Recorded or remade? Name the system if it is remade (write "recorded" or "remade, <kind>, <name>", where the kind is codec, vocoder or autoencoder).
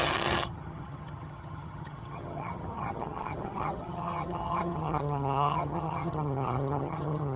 remade, vocoder, HiFi-GAN